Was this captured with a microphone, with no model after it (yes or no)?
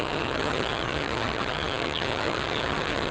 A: no